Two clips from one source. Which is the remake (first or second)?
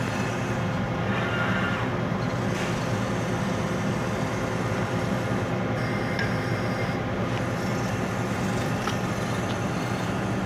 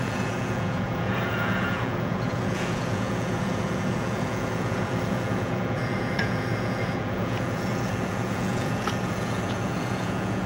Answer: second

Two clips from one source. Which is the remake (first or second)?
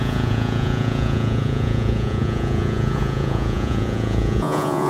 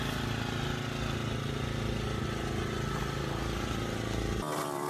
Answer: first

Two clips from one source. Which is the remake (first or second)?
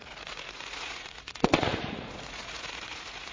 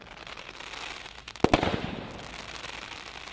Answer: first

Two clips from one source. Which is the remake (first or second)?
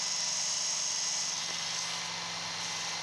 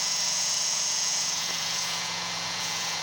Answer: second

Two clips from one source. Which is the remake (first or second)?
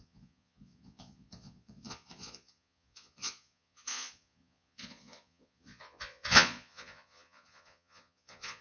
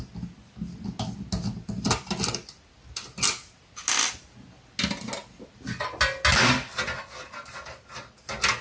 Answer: first